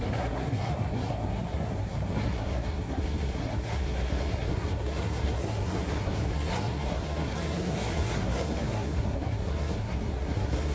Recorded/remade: remade